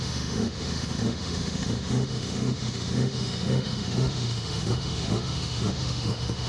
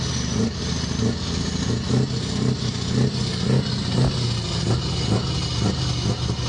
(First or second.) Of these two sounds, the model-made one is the first